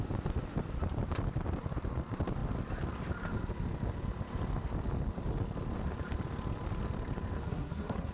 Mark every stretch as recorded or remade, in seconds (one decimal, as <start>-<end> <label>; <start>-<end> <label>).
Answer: 0.0-7.4 recorded; 7.4-8.1 remade